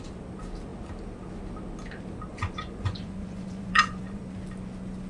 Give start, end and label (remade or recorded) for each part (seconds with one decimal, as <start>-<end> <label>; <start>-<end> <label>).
0.0-2.3 recorded; 2.3-4.2 remade; 4.2-5.1 recorded